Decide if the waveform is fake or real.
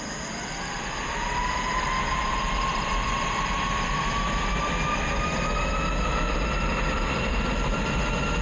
real